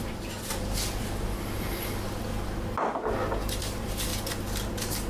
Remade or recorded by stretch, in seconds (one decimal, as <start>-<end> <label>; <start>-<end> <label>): 0.0-5.1 recorded